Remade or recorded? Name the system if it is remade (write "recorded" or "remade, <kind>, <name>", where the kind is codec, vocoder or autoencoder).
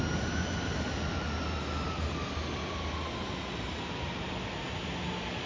recorded